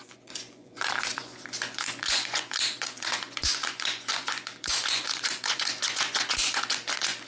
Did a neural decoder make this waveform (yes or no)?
yes